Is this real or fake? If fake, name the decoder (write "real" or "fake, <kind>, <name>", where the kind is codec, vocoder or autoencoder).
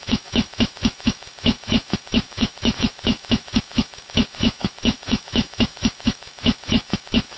fake, autoencoder, DAC-VAE